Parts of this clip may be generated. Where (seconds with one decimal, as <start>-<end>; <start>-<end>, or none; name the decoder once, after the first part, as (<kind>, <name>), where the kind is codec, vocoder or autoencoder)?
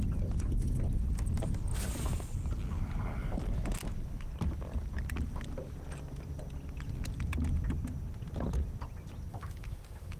9.3-10.2 (autoencoder, DAC-VAE)